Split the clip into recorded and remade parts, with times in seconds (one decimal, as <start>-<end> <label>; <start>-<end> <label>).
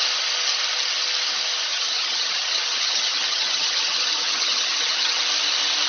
0.0-1.7 recorded; 1.7-5.2 remade; 5.2-5.9 recorded